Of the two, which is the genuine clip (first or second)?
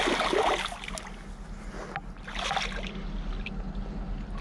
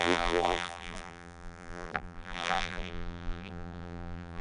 first